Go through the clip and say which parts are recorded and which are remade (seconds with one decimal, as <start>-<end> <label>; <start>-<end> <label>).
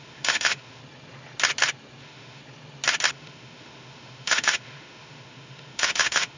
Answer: 0.0-0.8 remade; 0.8-2.0 recorded; 2.0-2.4 remade; 2.4-3.1 recorded; 3.1-6.4 remade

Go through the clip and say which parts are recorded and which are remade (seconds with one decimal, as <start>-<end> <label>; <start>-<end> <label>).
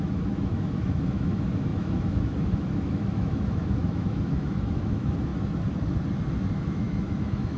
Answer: 0.0-5.3 remade; 5.3-6.5 recorded; 6.5-7.6 remade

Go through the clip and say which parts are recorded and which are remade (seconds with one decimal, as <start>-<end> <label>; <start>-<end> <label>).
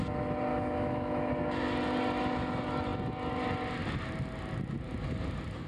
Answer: 0.0-0.5 recorded; 0.5-1.3 remade; 1.3-5.7 recorded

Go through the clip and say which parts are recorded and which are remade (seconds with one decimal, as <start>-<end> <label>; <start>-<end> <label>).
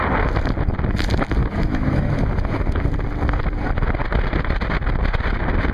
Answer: 0.0-1.4 recorded; 1.4-2.2 remade; 2.2-5.7 recorded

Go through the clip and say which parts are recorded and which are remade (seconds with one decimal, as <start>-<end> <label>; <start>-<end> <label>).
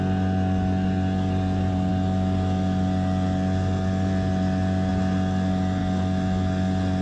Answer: 0.0-7.0 recorded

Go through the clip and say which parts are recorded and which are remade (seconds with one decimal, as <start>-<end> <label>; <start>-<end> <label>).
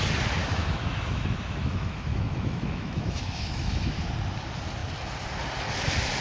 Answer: 0.0-0.4 recorded; 0.4-4.1 remade; 4.1-6.2 recorded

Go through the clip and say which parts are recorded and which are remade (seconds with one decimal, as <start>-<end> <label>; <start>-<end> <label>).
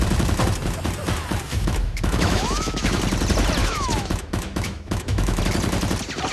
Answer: 0.0-1.5 recorded; 1.5-3.0 remade; 3.0-3.6 recorded; 3.6-5.4 remade; 5.4-6.3 recorded